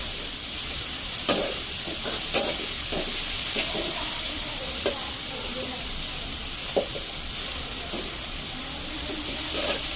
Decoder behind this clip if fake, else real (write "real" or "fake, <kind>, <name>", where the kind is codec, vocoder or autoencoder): fake, vocoder, BigVGAN v2